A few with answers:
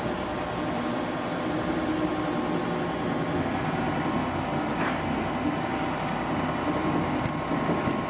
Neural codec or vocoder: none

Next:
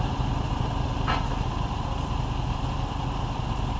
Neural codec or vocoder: vocoder, BigVGAN v2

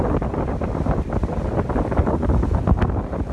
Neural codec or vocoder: none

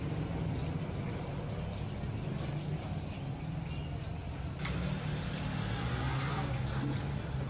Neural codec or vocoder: none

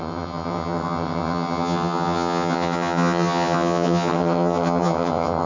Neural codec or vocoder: vocoder, HiFi-GAN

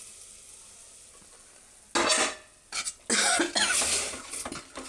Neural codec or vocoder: none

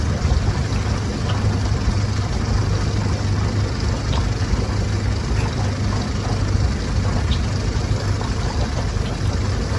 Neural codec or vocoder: none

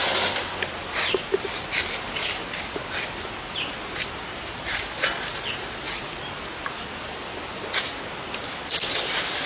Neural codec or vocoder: none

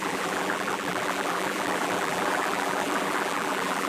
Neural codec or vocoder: vocoder, BigVGAN v2